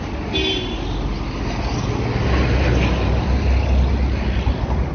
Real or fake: real